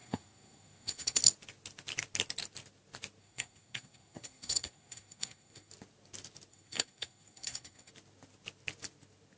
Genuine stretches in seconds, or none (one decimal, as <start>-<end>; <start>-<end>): 1.2-3.2; 5.7-6.5; 7.9-9.4